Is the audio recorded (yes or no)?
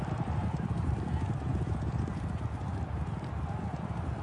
yes